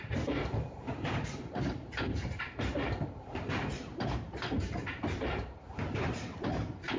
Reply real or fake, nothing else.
fake